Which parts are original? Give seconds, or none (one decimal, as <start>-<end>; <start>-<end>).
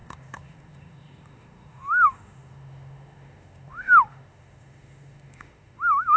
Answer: none